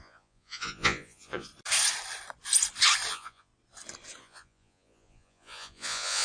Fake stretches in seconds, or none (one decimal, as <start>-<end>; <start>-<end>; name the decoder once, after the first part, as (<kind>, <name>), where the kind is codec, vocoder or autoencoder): 0.0-1.5 (vocoder, Vocos); 3.1-3.5; 4.2-6.2